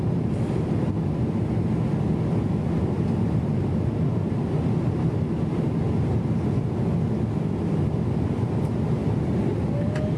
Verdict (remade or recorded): recorded